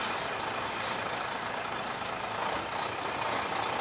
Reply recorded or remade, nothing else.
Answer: recorded